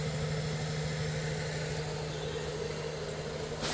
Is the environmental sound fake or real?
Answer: real